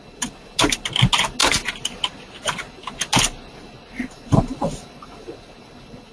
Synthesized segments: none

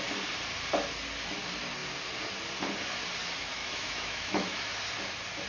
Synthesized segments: 3.6-4.8 (autoencoder, DAC-VAE)

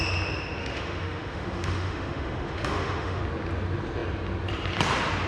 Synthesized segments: 0.6-3.2 (autoencoder, DAC-VAE)

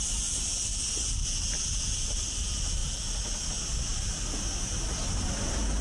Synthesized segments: none

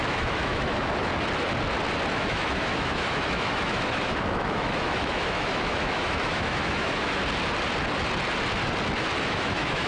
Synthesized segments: 0.0-1.1 (autoencoder, DAC-VAE); 2.1-7.2; 9.2-9.9

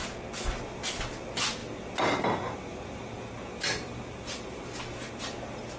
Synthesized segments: none

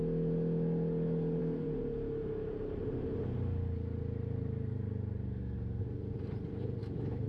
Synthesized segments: 6.8-7.3 (autoencoder, DAC-VAE)

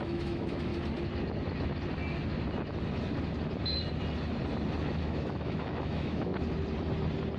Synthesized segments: 0.0-0.7 (autoencoder, DAC-VAE); 5.0-6.3